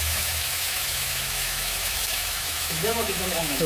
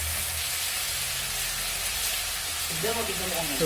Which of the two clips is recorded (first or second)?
second